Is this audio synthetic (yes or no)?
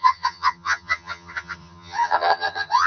yes